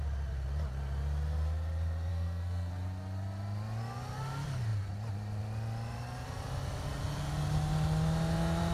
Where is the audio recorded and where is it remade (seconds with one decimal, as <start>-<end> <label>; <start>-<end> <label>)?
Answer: 0.0-2.1 recorded; 2.1-2.7 remade; 2.7-8.7 recorded